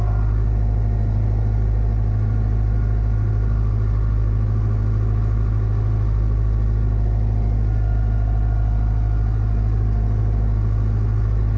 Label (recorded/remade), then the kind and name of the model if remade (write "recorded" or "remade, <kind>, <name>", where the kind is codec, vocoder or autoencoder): recorded